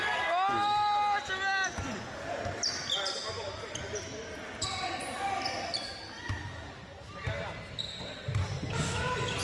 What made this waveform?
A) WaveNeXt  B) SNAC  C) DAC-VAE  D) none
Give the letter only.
D